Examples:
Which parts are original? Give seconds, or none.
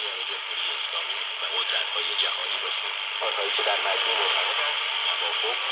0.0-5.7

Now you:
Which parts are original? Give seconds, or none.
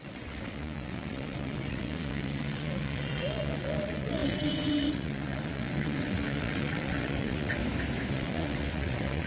7.6-8.1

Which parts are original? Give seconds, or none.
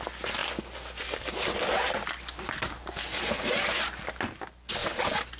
0.0-4.8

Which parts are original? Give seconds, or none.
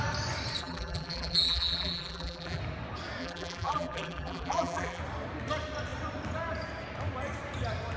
0.0-0.6; 2.6-3.2; 5.0-8.0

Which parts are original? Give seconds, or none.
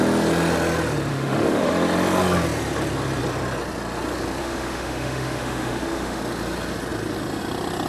0.0-1.1; 1.7-4.4; 6.2-7.9